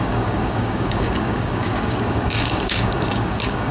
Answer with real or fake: fake